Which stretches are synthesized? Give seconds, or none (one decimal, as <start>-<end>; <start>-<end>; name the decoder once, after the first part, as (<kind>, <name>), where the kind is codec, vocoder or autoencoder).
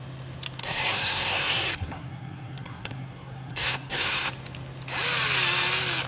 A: 0.6-4.3 (codec, SNAC)